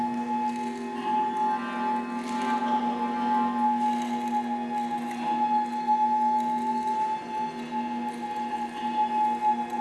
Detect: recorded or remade recorded